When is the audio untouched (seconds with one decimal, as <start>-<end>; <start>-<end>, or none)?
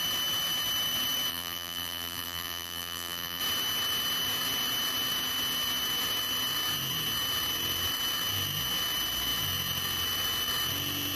0.0-1.3; 3.4-11.2